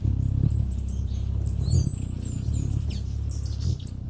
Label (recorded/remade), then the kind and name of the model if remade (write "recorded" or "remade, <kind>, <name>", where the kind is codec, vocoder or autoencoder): recorded